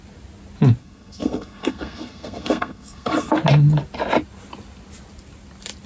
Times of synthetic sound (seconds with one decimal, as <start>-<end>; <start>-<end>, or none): 0.8-3.3